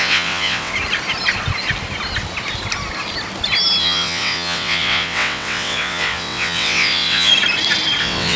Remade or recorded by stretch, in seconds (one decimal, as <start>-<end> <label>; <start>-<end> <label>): 0.0-0.7 remade; 0.7-3.8 recorded; 3.8-7.3 remade; 7.3-8.0 recorded; 8.0-8.4 remade